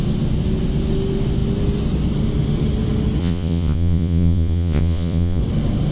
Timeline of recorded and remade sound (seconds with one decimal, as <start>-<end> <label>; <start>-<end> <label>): 0.0-3.2 recorded; 3.2-5.4 remade; 5.4-5.9 recorded